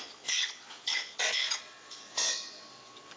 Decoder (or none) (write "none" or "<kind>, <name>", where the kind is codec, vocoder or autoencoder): vocoder, Vocos